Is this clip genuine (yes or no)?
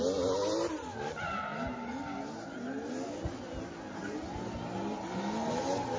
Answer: yes